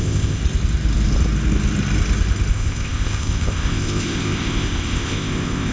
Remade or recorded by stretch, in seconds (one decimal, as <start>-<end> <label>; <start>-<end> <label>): 0.0-0.4 remade; 0.4-2.5 recorded; 2.5-5.7 remade